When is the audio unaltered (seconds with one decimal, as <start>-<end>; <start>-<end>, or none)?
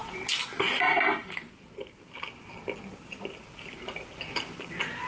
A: 0.0-5.1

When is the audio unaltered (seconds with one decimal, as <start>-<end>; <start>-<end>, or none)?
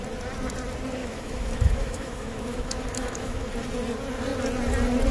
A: 0.0-1.0; 3.5-5.1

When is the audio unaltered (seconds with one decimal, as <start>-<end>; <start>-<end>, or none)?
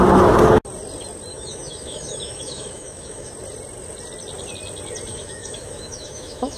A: 0.0-1.3; 3.3-5.1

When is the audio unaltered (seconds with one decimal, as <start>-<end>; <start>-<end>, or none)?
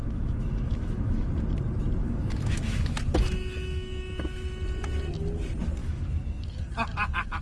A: 1.3-2.0; 3.0-5.8; 6.6-7.4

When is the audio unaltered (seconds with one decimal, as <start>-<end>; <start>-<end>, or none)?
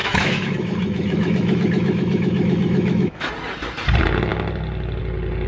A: 3.3-5.5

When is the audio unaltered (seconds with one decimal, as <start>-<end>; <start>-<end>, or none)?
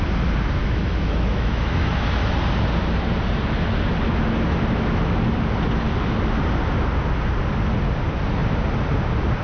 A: 0.0-0.6; 1.9-9.4